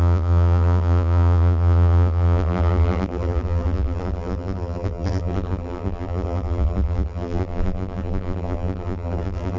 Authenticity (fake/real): fake